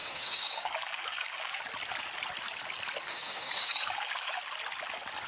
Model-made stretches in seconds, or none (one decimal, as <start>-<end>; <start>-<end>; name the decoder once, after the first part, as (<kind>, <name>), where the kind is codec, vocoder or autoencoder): 0.0-1.6 (codec, DAC); 3.1-4.4